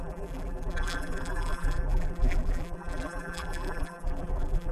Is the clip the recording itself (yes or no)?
no